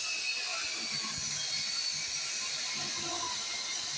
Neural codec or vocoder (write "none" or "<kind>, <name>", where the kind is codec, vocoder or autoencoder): none